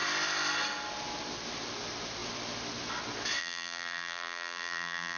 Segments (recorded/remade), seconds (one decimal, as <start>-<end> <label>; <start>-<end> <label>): 0.0-3.4 recorded; 3.4-5.2 remade